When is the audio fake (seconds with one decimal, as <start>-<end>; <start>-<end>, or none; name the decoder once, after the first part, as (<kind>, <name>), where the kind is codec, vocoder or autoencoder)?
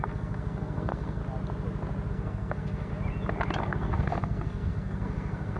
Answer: 0.0-1.2 (codec, SNAC); 2.1-2.9; 3.6-5.6